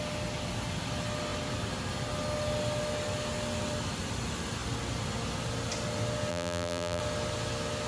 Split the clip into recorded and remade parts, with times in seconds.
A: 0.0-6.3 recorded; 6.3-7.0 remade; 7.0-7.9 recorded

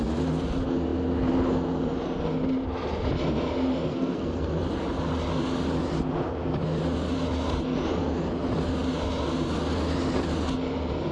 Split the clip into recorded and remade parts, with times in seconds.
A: 0.0-3.9 recorded; 3.9-4.6 remade; 4.6-11.1 recorded

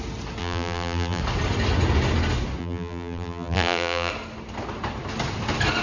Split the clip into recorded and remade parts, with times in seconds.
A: 0.0-0.4 recorded; 0.4-1.2 remade; 1.2-2.6 recorded; 2.6-4.1 remade; 4.1-5.8 recorded

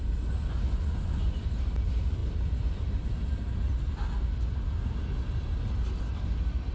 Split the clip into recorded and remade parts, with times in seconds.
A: 0.0-6.7 recorded

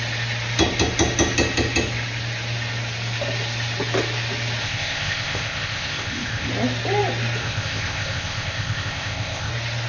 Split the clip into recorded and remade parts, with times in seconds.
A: 0.0-4.6 recorded; 4.6-6.5 remade; 6.5-7.4 recorded; 7.4-9.5 remade; 9.5-9.9 recorded

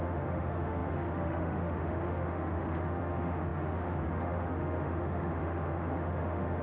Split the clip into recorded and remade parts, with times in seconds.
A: 0.0-6.6 remade

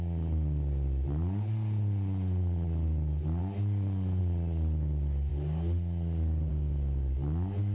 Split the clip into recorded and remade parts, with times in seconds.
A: 0.0-7.7 recorded

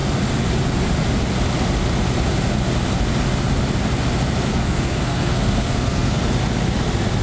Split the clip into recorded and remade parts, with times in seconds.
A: 0.0-4.5 recorded; 4.5-6.2 remade; 6.2-7.2 recorded